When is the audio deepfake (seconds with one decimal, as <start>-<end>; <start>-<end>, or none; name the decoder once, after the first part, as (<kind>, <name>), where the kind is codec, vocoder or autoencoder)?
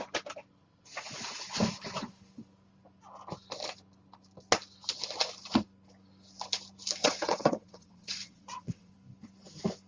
7.0-8.9 (vocoder, WaveNeXt)